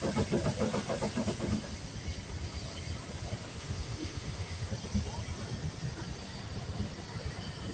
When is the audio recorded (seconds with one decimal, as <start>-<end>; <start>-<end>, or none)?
0.0-3.5; 4.7-7.7